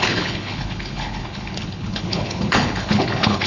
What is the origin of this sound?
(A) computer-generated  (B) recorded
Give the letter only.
A